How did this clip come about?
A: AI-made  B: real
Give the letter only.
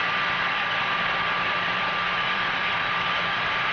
A